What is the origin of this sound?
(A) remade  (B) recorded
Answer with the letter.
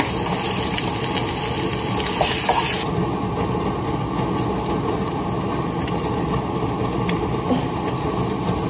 B